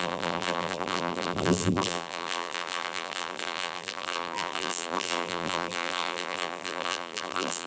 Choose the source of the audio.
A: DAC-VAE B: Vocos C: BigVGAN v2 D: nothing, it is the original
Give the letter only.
C